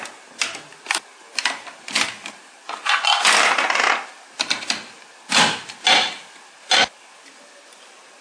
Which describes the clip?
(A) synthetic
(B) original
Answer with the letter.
B